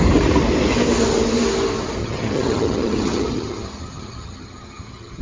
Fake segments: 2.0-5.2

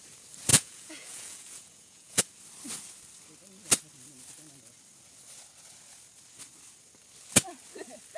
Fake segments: 0.5-2.2

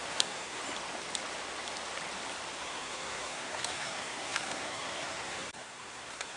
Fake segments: 0.0-0.6; 2.6-6.4

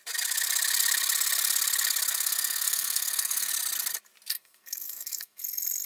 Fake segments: 2.1-3.5; 4.3-5.4

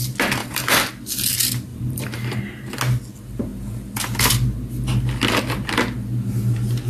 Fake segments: 0.4-0.9; 1.7-2.4

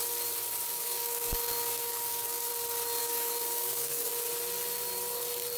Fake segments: 0.7-2.5; 3.0-4.1

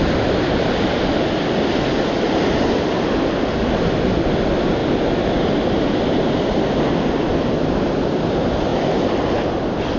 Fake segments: none